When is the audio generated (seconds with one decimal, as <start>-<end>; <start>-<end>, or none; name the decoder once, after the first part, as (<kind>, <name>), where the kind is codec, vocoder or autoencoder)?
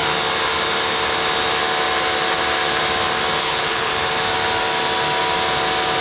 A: 3.4-3.9 (codec, HILCodec)